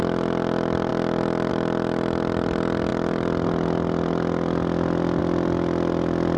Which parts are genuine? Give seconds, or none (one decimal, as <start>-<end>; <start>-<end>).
0.0-6.4